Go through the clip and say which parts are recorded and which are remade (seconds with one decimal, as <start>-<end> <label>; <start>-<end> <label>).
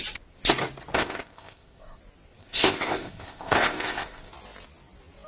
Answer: 0.0-1.0 recorded; 1.0-2.0 remade; 2.0-2.4 recorded; 2.4-4.3 remade; 4.3-5.3 recorded